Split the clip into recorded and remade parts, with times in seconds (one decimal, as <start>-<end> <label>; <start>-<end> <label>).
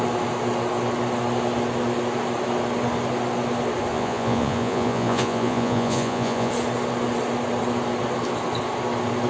0.0-3.9 recorded; 3.9-6.5 remade; 6.5-9.3 recorded